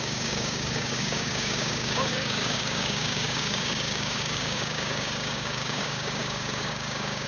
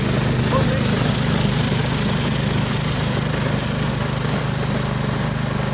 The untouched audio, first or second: second